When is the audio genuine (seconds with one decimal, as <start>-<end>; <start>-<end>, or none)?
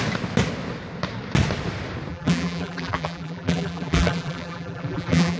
0.0-2.1